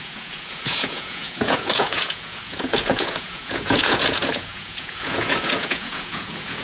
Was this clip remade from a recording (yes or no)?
yes